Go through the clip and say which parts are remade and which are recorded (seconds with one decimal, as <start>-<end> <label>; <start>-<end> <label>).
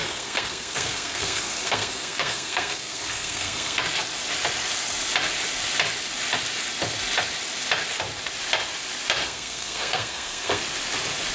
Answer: 0.0-3.8 remade; 3.8-9.2 recorded; 9.2-10.6 remade; 10.6-11.3 recorded